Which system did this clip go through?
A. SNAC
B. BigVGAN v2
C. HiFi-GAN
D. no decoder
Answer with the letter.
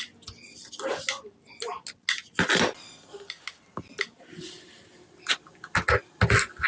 D